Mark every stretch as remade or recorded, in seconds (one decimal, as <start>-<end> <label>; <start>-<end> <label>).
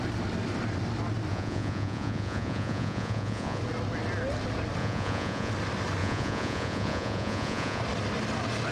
0.0-1.3 recorded; 1.3-3.6 remade; 3.6-4.8 recorded; 4.8-5.5 remade; 5.5-6.0 recorded; 6.0-7.8 remade; 7.8-8.7 recorded